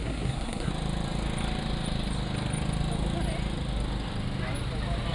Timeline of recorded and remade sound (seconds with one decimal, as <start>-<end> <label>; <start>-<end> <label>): 0.0-0.7 remade; 0.7-5.1 recorded